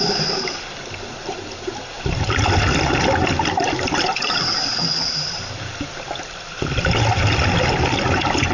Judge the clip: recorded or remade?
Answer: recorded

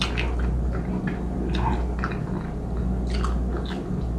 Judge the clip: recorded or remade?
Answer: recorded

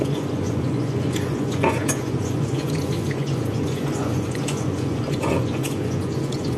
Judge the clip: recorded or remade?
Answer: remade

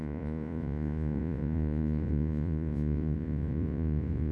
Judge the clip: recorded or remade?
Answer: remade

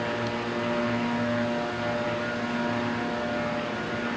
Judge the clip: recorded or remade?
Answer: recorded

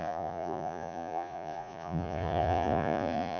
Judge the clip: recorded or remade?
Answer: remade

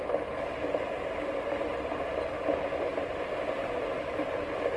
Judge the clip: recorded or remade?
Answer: recorded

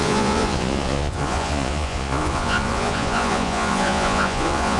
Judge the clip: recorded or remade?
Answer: remade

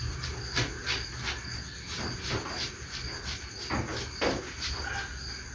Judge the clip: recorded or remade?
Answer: recorded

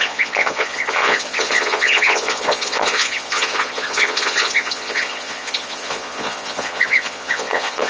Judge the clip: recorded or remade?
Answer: remade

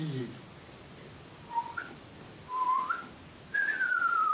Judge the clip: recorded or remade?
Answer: recorded